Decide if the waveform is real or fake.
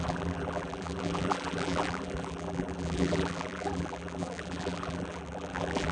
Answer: fake